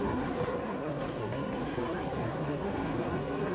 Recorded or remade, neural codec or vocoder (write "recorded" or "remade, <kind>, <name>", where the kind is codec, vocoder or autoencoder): remade, codec, SNAC